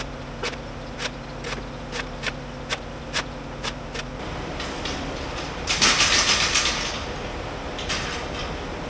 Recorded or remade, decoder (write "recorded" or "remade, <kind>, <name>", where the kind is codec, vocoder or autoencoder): recorded